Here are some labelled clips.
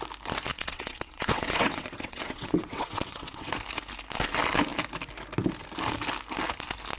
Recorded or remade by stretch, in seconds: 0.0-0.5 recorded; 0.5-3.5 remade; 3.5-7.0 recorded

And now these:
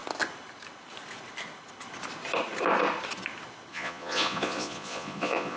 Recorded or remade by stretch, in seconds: 0.0-3.7 recorded; 3.7-5.6 remade

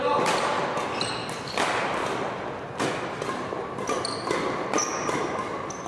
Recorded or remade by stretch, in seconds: 0.0-5.9 recorded

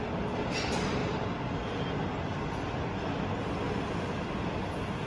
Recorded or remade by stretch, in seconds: 0.0-5.1 recorded

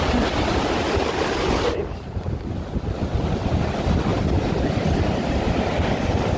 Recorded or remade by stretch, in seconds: 0.0-4.1 remade; 4.1-4.8 recorded; 4.8-6.4 remade

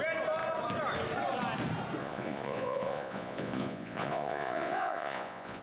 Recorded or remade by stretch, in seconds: 0.0-2.0 recorded; 2.0-5.6 remade